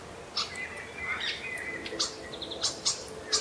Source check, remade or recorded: recorded